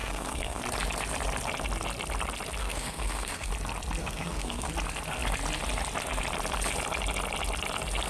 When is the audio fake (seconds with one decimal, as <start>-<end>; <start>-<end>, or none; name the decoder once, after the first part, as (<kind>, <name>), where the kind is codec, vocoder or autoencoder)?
0.0-0.6 (codec, SNAC); 2.6-3.5; 4.0-4.7